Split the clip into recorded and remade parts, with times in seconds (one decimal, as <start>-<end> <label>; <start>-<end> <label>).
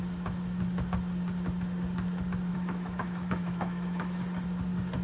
0.0-2.5 recorded; 2.5-4.2 remade; 4.2-5.0 recorded